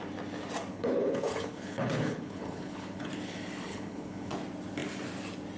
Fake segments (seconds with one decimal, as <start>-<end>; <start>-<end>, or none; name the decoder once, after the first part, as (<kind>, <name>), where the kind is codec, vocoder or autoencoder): 0.7-3.1 (codec, HILCodec); 3.7-4.3